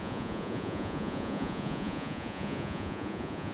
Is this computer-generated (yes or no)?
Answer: yes